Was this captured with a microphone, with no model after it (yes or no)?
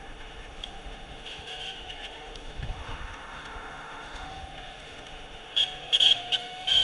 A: no